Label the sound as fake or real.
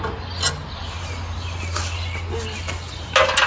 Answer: real